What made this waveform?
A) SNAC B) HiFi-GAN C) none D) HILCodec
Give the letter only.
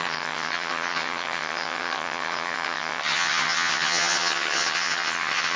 B